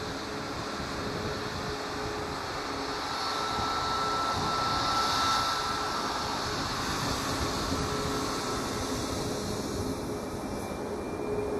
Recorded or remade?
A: recorded